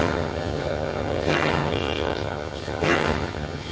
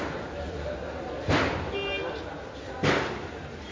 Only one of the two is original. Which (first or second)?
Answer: second